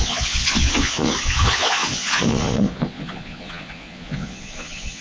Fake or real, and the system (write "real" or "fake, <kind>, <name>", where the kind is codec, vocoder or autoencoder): fake, vocoder, Vocos